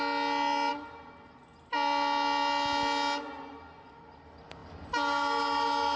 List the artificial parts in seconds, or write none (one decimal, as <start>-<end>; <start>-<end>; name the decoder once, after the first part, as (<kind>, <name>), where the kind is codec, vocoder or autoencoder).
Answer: none